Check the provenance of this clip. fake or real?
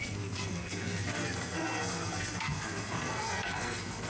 fake